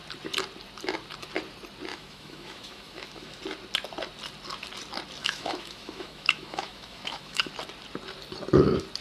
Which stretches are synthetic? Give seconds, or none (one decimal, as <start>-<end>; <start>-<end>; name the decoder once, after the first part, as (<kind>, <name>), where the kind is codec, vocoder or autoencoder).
1.9-3.4 (autoencoder, DAC-VAE); 5.2-7.5